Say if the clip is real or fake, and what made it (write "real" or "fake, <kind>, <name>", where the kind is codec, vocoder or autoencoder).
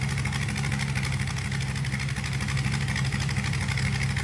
real